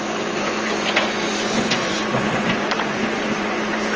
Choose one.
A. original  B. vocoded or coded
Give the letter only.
B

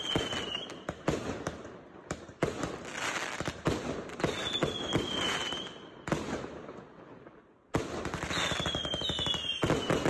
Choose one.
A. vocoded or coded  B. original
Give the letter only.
B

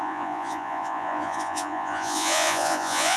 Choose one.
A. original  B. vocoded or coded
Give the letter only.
B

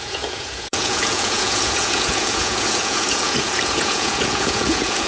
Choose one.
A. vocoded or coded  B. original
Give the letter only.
A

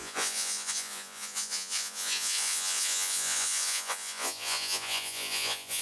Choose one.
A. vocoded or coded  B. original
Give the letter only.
A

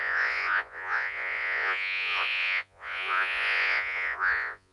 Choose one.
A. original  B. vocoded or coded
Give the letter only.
B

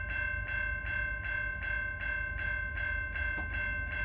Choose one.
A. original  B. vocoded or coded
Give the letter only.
A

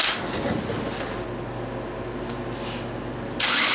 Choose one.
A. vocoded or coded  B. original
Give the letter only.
B